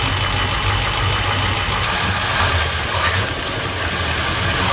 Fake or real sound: real